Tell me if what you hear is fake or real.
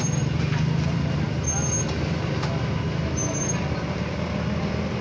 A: real